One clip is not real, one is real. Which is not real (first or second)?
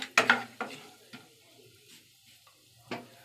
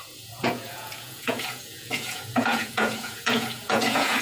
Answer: second